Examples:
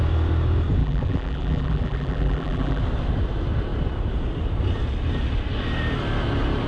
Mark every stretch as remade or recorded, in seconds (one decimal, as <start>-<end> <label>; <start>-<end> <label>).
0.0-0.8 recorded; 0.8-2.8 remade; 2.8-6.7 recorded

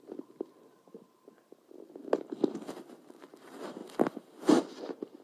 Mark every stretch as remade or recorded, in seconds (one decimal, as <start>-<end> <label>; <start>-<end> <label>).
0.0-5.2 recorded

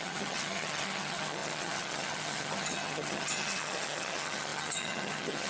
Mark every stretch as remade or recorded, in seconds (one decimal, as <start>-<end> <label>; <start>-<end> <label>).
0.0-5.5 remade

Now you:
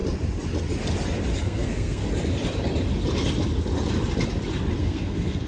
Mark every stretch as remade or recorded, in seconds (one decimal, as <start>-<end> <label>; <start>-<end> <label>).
0.0-1.4 recorded; 1.4-2.0 remade; 2.0-4.8 recorded; 4.8-5.5 remade

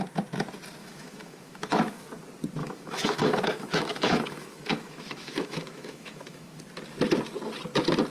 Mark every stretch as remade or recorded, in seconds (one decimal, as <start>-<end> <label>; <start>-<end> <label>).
0.0-0.8 recorded; 0.8-2.1 remade; 2.1-2.6 recorded; 2.6-6.6 remade; 6.6-8.1 recorded